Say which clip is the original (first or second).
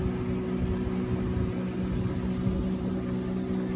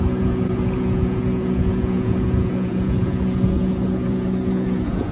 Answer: first